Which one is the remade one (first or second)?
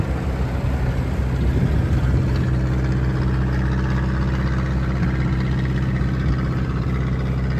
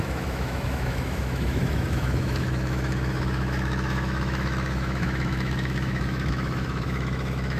second